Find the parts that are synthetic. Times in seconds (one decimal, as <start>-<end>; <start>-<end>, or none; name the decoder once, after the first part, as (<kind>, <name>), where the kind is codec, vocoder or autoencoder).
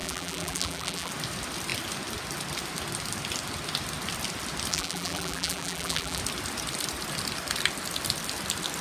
0.0-1.1 (vocoder, BigVGAN v2); 4.7-6.2